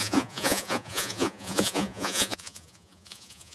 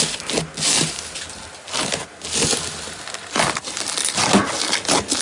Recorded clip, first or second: second